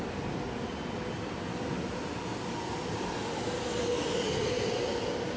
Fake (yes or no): no